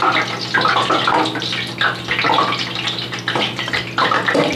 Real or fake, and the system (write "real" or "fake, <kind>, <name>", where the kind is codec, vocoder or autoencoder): real